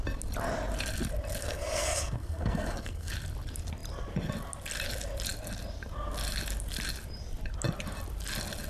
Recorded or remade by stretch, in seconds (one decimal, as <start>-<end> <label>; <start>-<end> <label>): 0.0-1.4 recorded; 1.4-3.1 remade; 3.1-8.7 recorded